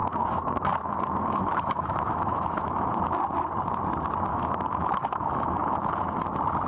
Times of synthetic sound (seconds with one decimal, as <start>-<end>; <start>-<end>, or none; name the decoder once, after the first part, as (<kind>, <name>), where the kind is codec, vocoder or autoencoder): 0.0-2.9 (autoencoder, DAC-VAE); 4.3-6.2